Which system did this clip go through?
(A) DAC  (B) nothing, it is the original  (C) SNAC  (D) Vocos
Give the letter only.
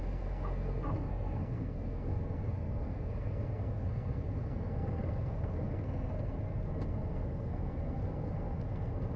C